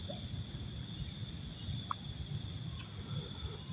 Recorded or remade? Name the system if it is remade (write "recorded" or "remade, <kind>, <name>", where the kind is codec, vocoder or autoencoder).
recorded